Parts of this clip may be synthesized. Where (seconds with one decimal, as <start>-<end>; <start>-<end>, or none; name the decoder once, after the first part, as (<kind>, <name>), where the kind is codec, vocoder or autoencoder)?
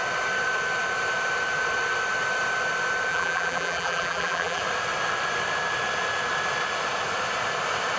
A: 3.1-4.6 (vocoder, BigVGAN v2)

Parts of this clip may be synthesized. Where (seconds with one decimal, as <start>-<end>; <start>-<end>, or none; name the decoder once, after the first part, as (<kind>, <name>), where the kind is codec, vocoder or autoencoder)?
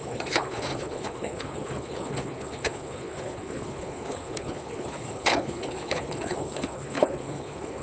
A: 0.0-7.8 (codec, HILCodec)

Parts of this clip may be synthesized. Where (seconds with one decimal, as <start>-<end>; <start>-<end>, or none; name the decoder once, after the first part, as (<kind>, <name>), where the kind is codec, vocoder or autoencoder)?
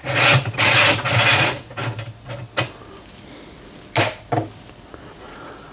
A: 0.0-1.8 (vocoder, Vocos); 5.1-5.7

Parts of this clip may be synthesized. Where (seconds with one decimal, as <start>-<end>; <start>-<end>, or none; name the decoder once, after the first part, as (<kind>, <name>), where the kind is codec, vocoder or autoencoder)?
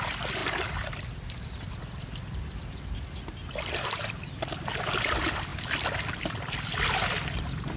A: none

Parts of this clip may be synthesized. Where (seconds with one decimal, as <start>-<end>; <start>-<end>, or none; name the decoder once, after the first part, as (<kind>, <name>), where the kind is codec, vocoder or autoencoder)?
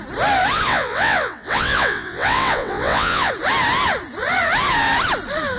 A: 0.7-3.3 (vocoder, WaveNeXt)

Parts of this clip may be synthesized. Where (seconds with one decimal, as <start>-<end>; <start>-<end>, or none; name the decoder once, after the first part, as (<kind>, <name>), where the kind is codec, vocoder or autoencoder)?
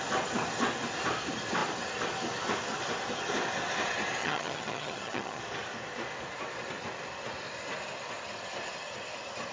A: 4.2-5.4 (vocoder, HiFi-GAN)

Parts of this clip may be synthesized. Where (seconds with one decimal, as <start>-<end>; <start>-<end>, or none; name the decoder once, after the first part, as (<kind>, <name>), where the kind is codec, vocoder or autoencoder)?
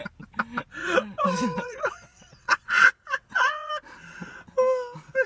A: 0.8-3.7 (vocoder, WaveNeXt)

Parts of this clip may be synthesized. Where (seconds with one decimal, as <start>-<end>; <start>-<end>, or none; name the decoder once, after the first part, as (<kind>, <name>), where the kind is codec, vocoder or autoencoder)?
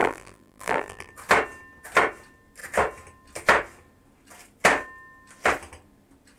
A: 0.0-1.1 (vocoder, BigVGAN v2)